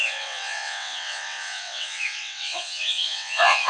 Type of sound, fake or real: fake